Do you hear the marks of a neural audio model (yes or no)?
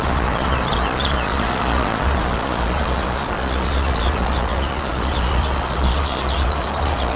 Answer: yes